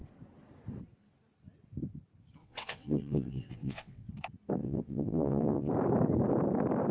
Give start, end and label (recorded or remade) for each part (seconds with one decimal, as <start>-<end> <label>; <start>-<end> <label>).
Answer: 0.0-2.4 recorded; 2.4-4.1 remade; 4.1-4.6 recorded; 4.6-5.7 remade; 5.7-6.9 recorded